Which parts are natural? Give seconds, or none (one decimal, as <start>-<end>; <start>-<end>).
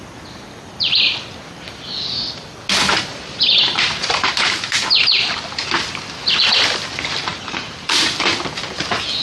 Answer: 0.0-3.1; 5.0-7.3; 8.3-9.2